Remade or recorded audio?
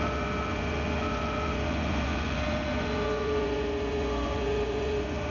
remade